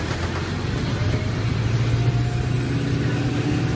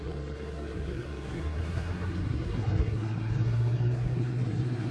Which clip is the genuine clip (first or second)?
first